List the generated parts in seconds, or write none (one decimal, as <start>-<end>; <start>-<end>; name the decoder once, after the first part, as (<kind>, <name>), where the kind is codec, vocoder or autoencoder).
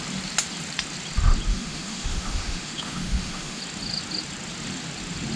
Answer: 1.5-3.6 (autoencoder, DAC-VAE)